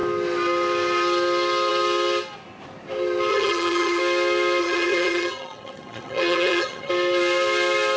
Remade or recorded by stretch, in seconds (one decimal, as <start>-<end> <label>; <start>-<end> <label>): 0.0-3.3 recorded; 3.3-4.0 remade; 4.0-4.6 recorded; 4.6-6.9 remade; 6.9-8.0 recorded